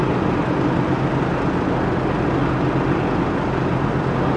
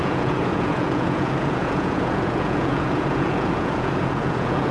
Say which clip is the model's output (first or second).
second